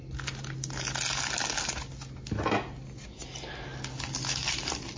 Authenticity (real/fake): real